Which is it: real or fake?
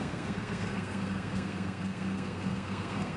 fake